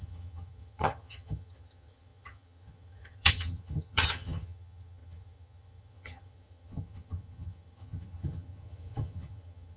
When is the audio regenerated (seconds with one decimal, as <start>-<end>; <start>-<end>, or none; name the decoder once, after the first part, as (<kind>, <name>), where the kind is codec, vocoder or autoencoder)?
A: 0.0-9.8 (vocoder, HiFi-GAN)